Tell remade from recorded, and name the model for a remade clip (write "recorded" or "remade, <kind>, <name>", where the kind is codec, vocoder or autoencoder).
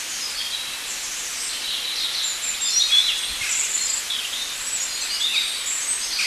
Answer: recorded